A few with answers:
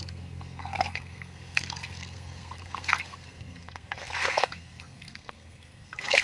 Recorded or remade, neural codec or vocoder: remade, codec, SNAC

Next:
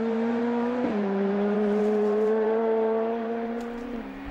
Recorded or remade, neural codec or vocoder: remade, vocoder, BigVGAN v2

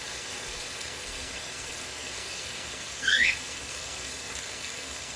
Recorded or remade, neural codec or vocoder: remade, codec, SNAC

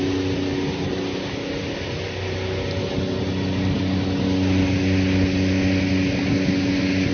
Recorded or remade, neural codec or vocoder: recorded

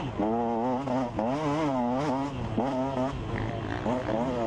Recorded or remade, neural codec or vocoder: recorded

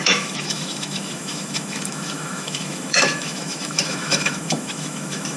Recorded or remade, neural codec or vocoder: remade, autoencoder, DAC-VAE